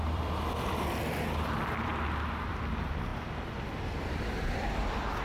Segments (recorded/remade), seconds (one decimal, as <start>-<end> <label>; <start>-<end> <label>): 0.0-1.9 remade; 1.9-2.5 recorded; 2.5-3.1 remade; 3.1-4.0 recorded; 4.0-5.2 remade